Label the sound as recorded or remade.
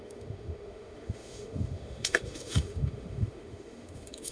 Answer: remade